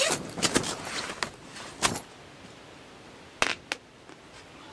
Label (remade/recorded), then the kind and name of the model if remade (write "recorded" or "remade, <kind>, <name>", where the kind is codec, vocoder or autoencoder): recorded